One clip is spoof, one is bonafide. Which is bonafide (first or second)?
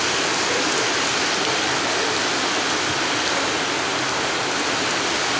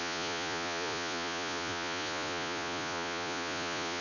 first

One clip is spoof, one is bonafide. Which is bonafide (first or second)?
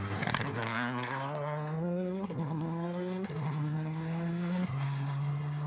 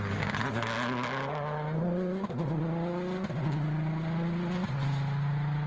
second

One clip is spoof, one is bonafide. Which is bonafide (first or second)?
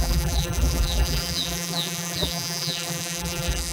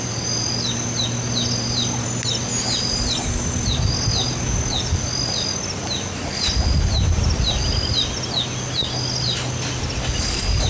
second